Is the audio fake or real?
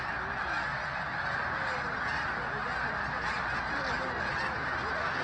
real